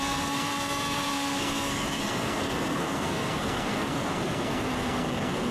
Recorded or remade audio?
remade